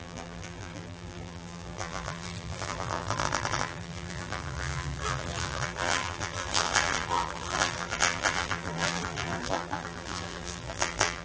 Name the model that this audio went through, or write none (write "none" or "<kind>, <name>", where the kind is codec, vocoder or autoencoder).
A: vocoder, BigVGAN v2